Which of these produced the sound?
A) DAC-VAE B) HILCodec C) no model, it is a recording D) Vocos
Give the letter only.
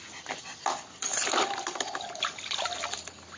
C